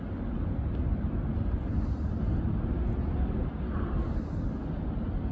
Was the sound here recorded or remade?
recorded